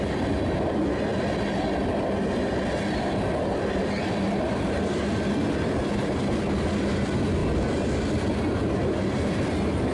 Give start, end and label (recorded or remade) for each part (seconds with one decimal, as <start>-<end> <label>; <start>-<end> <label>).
0.0-9.9 recorded